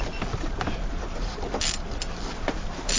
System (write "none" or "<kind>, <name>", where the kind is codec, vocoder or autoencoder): none